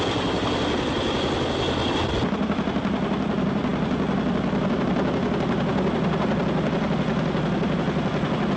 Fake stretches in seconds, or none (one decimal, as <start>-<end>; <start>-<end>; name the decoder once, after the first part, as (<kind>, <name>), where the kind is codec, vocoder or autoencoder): none